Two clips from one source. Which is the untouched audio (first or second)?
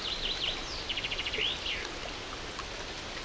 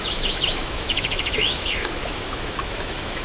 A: first